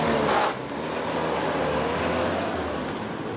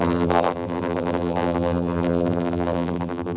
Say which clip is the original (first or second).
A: first